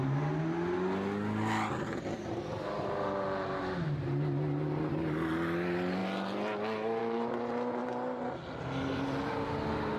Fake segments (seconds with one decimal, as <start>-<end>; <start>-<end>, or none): none